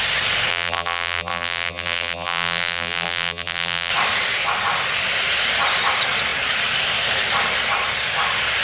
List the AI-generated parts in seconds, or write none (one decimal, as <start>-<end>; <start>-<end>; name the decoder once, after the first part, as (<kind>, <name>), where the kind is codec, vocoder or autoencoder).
0.5-3.9 (vocoder, BigVGAN v2)